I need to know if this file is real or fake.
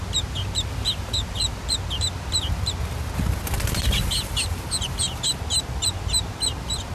real